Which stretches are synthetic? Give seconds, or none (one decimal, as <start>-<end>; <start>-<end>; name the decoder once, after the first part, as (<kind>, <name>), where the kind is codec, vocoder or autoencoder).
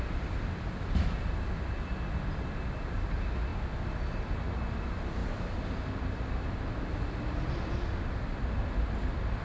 none